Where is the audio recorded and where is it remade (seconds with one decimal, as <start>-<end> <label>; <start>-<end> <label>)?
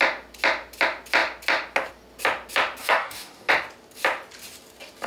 0.0-2.8 recorded; 2.8-3.5 remade; 3.5-5.1 recorded